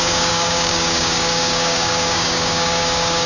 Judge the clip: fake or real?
fake